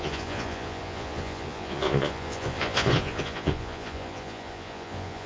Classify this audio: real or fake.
fake